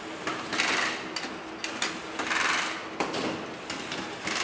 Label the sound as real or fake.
real